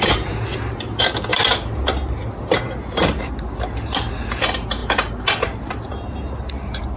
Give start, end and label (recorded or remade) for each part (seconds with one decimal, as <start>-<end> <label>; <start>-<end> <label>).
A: 0.0-7.0 recorded